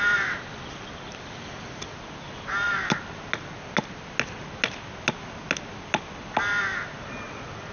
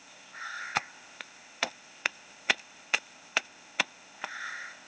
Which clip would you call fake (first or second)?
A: second